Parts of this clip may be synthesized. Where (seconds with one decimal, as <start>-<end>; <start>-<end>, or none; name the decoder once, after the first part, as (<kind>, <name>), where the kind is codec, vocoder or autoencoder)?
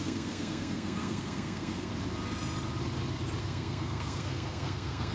0.0-1.9 (codec, SNAC); 3.4-5.1